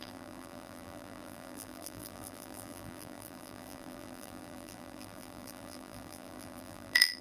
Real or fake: fake